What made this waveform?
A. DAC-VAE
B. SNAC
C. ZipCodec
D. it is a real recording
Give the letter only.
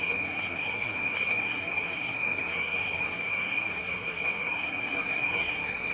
B